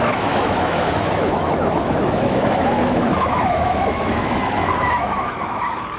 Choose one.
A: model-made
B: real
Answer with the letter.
A